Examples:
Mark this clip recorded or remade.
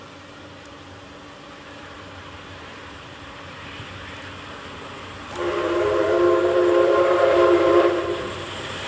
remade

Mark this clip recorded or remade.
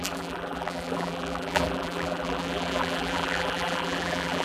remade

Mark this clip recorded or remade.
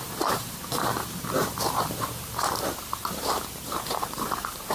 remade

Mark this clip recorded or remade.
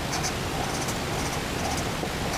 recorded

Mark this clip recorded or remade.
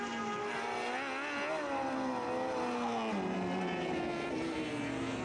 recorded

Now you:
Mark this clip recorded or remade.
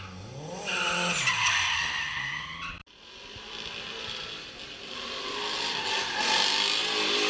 recorded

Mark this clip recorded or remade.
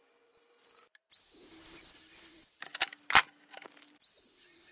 remade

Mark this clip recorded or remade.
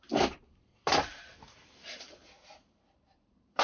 remade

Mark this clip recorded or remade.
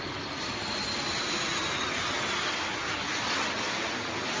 recorded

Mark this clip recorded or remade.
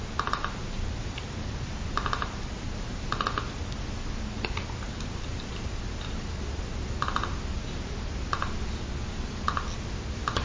recorded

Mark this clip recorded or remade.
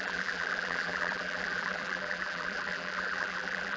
remade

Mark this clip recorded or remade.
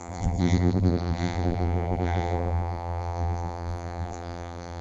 remade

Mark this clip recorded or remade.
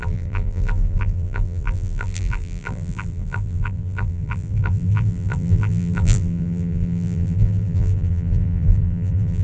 remade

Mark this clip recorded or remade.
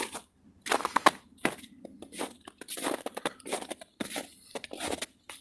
remade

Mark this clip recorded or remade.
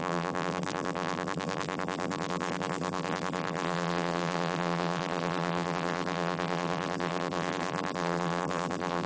remade